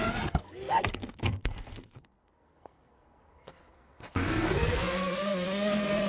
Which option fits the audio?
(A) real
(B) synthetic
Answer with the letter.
B